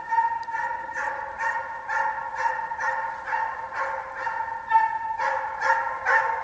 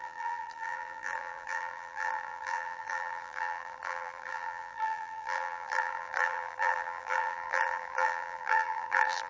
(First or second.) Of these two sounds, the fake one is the second